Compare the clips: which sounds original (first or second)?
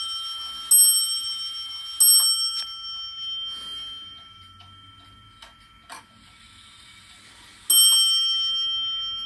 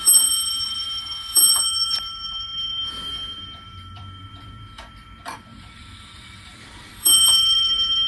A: first